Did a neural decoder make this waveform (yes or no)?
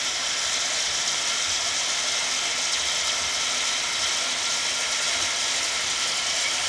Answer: no